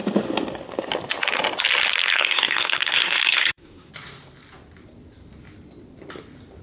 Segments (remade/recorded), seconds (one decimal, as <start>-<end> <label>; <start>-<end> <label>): 0.0-2.1 recorded; 2.1-3.9 remade; 3.9-6.6 recorded